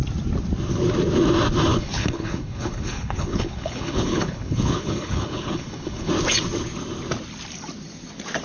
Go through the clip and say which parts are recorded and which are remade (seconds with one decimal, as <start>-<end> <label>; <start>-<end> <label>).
0.0-1.7 recorded; 1.7-6.1 remade; 6.1-8.4 recorded